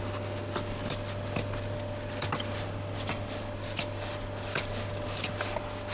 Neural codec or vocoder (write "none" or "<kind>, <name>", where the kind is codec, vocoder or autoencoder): none